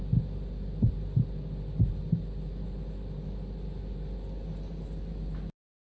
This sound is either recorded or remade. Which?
recorded